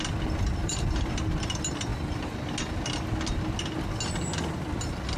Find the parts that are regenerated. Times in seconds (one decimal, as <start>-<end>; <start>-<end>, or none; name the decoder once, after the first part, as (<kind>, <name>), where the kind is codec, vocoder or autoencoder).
0.6-1.1 (vocoder, BigVGAN v2)